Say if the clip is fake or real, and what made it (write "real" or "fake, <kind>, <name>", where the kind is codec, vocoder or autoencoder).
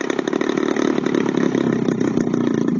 real